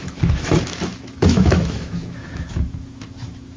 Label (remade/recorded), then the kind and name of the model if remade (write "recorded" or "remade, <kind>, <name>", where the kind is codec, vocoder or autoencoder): remade, autoencoder, DAC-VAE